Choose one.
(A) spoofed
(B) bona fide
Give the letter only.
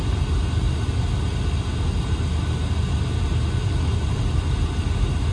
B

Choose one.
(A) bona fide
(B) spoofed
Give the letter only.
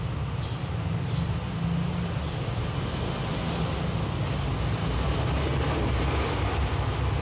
A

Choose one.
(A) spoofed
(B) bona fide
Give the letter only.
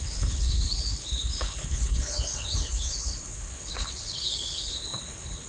A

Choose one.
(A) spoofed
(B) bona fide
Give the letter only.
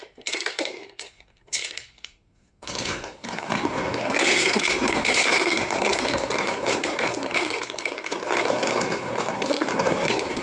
A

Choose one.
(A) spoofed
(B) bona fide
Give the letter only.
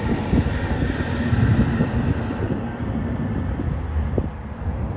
A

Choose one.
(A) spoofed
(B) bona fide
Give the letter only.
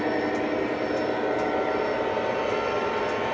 B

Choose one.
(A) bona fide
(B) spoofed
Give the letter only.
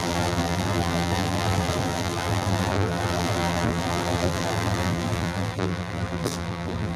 B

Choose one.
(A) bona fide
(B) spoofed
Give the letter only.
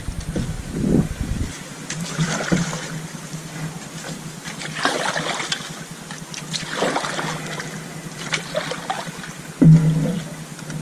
A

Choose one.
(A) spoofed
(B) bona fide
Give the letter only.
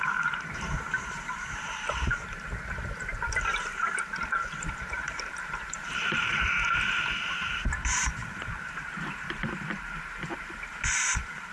A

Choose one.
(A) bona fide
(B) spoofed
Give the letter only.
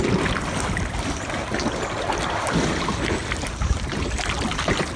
A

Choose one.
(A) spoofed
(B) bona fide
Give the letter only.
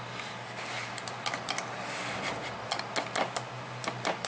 B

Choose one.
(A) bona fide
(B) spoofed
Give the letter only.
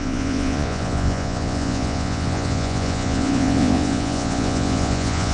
B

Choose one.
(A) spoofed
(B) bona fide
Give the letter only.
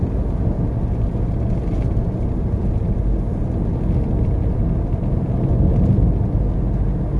B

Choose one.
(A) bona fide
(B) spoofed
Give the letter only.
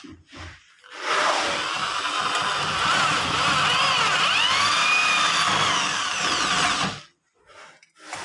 A